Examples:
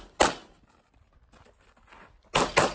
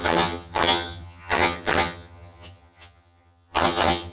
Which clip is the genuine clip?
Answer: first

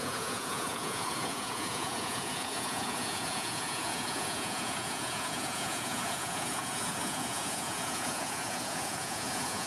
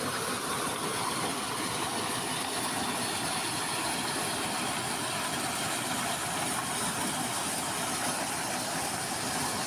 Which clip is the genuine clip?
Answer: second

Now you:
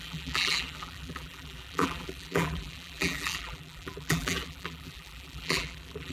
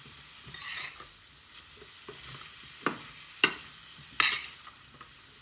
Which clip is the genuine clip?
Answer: second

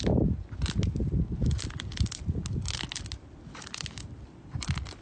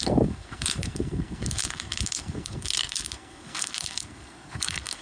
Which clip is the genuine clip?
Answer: first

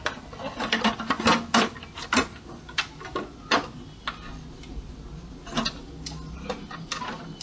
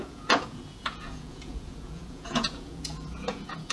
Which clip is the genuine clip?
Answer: first